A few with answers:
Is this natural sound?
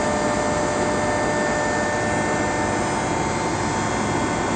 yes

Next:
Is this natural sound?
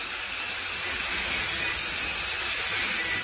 yes